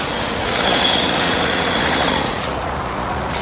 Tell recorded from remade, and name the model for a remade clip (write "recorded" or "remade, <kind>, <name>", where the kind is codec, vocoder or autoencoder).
remade, vocoder, Vocos